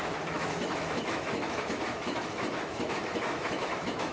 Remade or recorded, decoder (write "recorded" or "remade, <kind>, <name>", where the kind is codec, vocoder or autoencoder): remade, autoencoder, DAC-VAE